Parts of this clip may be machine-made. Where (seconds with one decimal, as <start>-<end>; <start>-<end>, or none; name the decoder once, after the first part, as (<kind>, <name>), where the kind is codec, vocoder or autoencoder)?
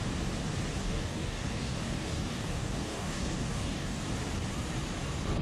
0.8-4.0 (codec, DAC)